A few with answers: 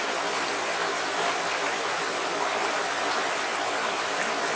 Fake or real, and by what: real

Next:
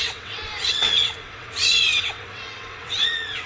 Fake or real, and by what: fake, vocoder, WaveNeXt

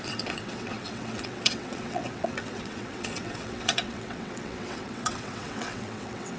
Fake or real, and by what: fake, vocoder, WaveNeXt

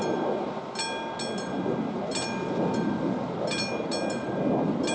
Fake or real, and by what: real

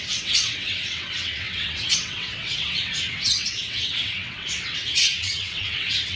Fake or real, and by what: fake, vocoder, WaveNeXt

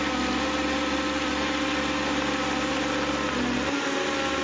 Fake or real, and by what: real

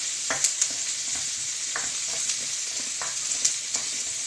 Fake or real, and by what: real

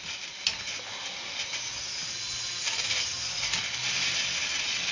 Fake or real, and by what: real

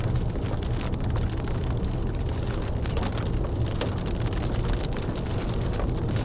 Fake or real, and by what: real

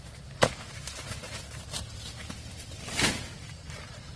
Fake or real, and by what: real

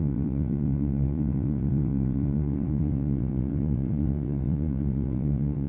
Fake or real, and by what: fake, vocoder, WaveNeXt